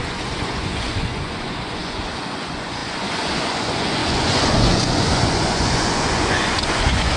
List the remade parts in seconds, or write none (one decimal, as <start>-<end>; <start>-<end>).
0.0-7.2